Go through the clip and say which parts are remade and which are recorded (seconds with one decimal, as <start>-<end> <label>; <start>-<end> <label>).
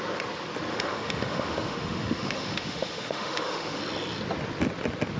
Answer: 0.0-0.7 recorded; 0.7-3.8 remade; 3.8-5.2 recorded